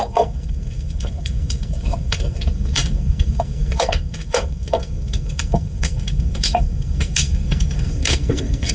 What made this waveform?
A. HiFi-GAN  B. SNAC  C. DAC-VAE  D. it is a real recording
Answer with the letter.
B